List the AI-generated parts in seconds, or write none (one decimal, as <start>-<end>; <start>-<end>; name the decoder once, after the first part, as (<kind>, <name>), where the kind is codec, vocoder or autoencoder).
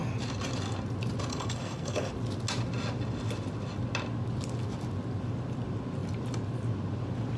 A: 1.3-2.1 (codec, SNAC)